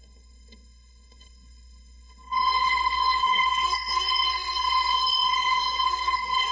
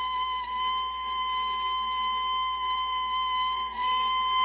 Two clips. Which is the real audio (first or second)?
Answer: second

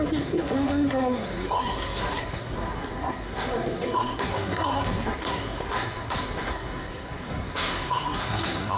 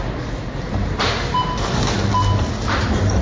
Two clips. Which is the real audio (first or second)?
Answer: second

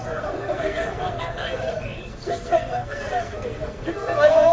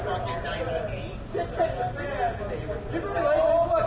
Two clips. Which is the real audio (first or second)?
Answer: second